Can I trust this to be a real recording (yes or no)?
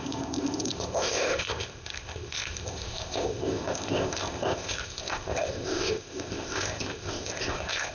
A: no